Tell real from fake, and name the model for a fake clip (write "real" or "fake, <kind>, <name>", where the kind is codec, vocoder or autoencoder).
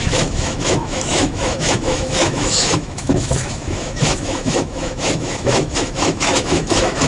fake, autoencoder, DAC-VAE